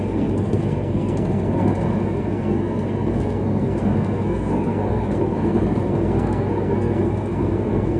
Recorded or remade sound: remade